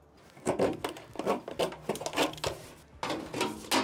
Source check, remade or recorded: recorded